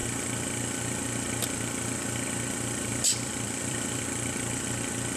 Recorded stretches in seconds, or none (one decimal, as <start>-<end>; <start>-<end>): 0.0-2.9; 4.0-5.2